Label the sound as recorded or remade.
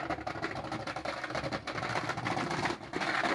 recorded